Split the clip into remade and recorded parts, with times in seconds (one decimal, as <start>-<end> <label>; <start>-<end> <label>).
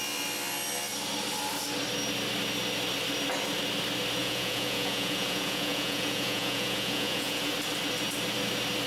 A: 0.0-4.2 recorded; 4.2-7.5 remade; 7.5-8.9 recorded